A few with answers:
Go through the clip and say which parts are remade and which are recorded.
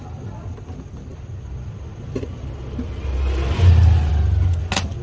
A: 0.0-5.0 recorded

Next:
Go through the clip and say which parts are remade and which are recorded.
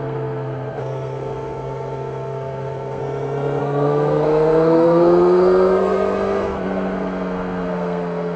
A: 0.0-3.0 remade; 3.0-3.6 recorded; 3.6-8.4 remade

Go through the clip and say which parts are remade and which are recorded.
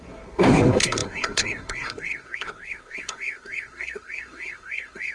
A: 0.0-5.1 remade